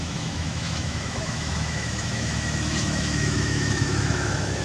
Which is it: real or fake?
fake